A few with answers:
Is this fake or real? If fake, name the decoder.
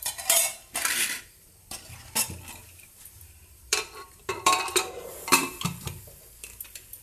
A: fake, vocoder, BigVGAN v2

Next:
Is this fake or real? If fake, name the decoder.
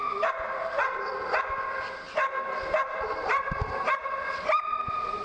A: real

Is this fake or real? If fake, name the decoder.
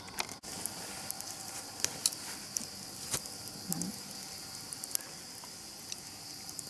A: real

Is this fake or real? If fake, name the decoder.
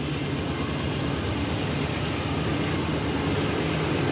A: fake, vocoder, BigVGAN v2